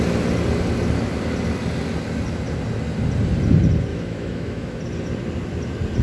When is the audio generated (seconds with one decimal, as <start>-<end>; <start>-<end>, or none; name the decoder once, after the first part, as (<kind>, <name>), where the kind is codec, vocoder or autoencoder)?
3.9-4.8 (autoencoder, DAC-VAE)